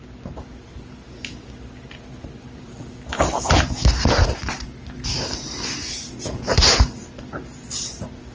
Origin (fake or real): real